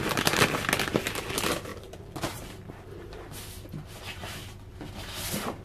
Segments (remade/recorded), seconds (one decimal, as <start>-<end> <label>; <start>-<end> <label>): 0.0-1.7 recorded; 1.7-3.1 remade; 3.1-5.6 recorded